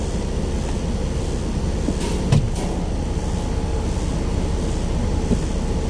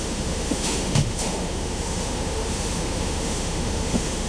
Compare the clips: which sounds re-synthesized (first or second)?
second